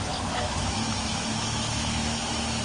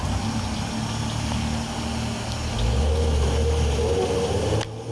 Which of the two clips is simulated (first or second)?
first